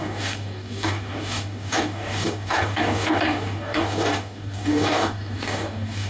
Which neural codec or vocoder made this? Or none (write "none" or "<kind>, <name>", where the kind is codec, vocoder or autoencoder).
codec, DAC